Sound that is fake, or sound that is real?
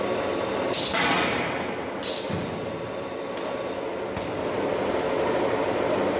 real